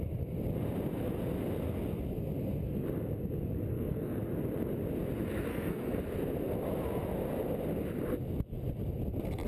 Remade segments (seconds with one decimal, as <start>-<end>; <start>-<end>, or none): 3.7-4.2; 5.5-6.0